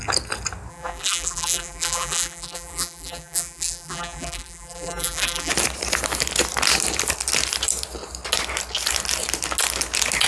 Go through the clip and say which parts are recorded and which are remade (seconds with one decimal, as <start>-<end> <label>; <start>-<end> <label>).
0.0-0.7 recorded; 0.7-5.5 remade; 5.5-10.3 recorded